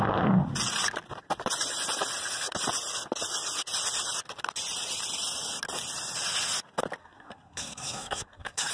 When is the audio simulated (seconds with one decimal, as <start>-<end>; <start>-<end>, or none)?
7.0-8.7